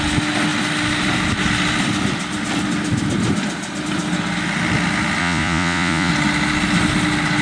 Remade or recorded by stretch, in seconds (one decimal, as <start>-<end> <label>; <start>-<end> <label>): 0.0-5.2 recorded; 5.2-6.1 remade; 6.1-7.4 recorded